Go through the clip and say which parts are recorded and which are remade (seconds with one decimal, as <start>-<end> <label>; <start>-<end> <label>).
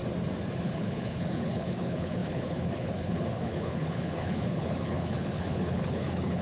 0.0-0.6 recorded; 0.6-6.4 remade